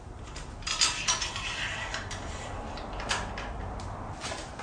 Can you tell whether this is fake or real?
real